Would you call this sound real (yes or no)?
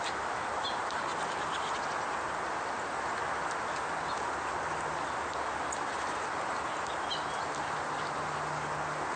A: yes